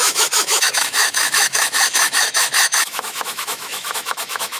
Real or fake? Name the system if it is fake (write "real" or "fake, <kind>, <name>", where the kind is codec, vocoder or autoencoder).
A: fake, autoencoder, DAC-VAE